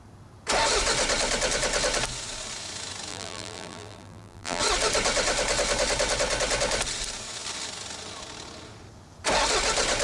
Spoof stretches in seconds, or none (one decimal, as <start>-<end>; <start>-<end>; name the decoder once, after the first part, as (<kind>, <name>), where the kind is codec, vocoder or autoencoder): 3.1-4.6 (vocoder, BigVGAN v2)